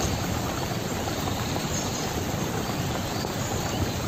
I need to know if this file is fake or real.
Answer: fake